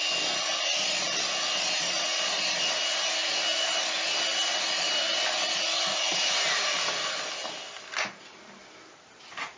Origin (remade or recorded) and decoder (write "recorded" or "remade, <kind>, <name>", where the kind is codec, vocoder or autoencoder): recorded